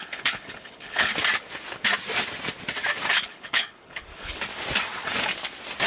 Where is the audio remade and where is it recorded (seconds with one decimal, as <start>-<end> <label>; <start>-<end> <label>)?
0.0-1.1 remade; 1.1-3.1 recorded; 3.1-4.5 remade; 4.5-5.9 recorded